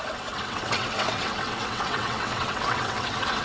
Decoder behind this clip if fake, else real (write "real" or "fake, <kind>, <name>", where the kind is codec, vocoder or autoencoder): fake, vocoder, WaveNeXt